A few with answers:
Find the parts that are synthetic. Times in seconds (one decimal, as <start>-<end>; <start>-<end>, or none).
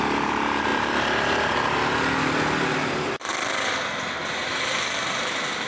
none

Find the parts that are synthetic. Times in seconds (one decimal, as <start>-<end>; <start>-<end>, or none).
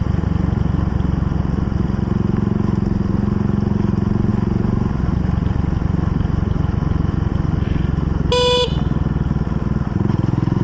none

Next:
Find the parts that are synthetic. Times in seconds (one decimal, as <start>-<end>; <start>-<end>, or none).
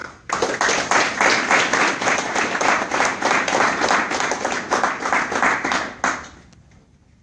none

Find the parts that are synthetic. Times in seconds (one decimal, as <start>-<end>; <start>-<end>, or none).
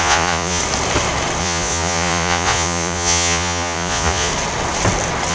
0.0-0.6; 1.4-4.3